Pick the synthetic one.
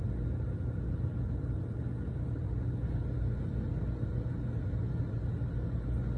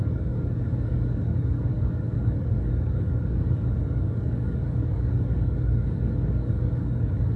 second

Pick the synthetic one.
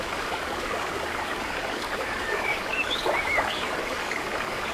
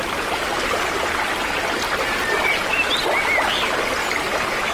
first